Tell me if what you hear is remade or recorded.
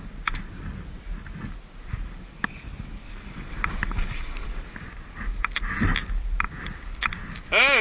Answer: recorded